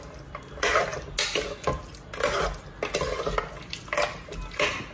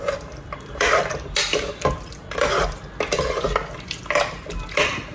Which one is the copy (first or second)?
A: second